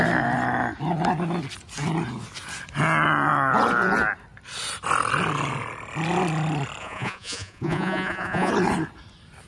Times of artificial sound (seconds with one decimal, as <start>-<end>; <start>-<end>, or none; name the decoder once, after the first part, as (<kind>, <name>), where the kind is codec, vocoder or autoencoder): 6.8-8.5 (vocoder, Vocos)